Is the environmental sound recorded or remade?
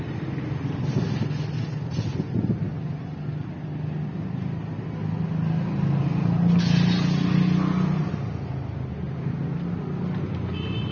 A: recorded